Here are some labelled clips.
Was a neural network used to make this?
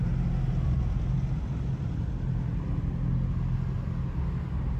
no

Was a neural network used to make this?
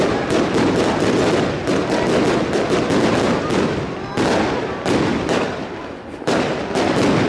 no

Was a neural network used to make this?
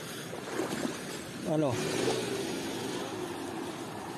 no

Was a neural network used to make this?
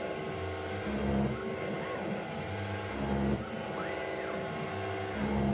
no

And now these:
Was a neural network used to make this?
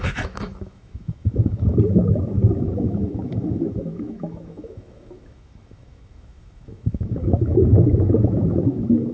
yes